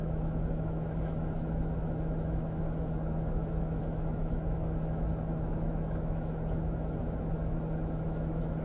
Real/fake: fake